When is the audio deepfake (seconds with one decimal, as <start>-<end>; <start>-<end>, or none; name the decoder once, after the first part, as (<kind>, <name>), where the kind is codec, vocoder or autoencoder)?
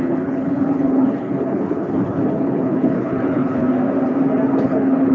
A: 0.0-3.6 (codec, HILCodec); 4.6-5.1